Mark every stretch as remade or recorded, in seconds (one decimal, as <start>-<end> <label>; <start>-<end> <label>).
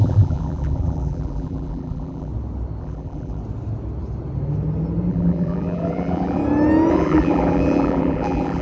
0.0-2.3 remade; 2.3-2.8 recorded; 2.8-3.4 remade; 3.4-5.1 recorded; 5.1-6.4 remade; 6.4-6.9 recorded; 6.9-8.6 remade